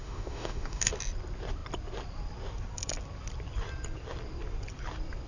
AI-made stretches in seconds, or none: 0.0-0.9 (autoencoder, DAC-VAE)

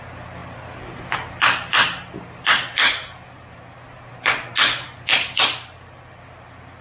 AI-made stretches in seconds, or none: none